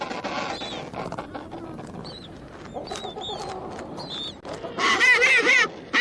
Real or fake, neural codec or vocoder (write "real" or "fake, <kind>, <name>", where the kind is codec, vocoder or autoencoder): real